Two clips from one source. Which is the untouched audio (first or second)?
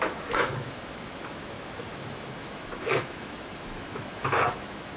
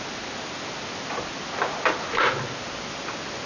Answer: second